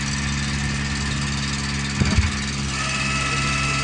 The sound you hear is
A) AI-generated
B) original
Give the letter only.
B